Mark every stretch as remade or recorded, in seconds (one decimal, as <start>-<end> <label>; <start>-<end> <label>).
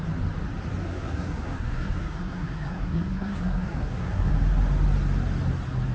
0.0-0.8 recorded; 0.8-4.3 remade; 4.3-5.9 recorded